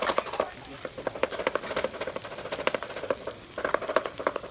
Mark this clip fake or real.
real